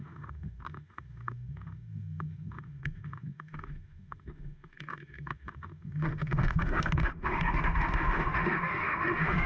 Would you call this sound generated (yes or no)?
yes